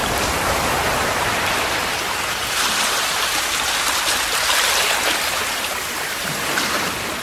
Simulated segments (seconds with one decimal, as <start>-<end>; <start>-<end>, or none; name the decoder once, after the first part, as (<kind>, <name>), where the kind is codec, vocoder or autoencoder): none